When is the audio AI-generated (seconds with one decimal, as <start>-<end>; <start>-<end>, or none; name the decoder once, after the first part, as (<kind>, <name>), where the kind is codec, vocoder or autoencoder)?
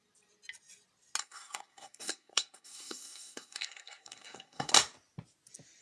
1.2-4.7 (codec, SNAC)